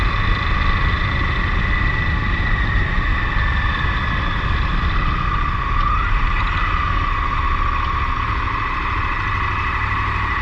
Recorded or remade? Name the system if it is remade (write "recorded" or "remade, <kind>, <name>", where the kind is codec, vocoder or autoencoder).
recorded